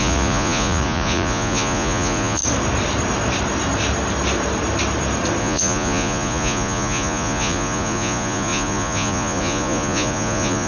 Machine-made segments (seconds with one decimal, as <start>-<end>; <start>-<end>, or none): 0.0-2.4; 5.4-10.7